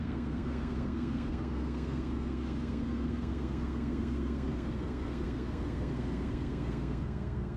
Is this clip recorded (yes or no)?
no